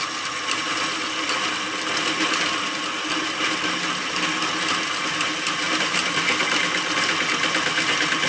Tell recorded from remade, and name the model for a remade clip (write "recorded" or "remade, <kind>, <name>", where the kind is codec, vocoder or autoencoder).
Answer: recorded